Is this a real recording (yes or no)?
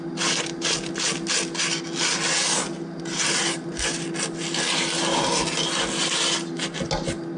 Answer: yes